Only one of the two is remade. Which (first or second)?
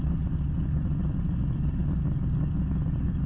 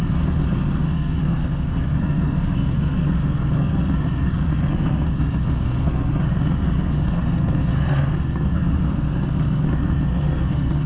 second